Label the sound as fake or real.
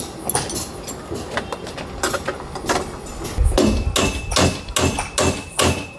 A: real